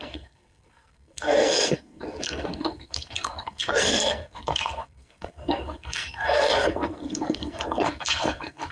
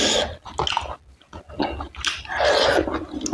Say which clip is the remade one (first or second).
first